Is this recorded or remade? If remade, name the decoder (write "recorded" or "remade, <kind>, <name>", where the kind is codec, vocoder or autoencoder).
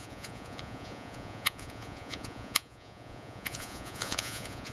remade, vocoder, Vocos